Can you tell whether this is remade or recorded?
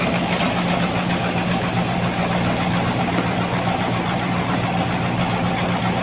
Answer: recorded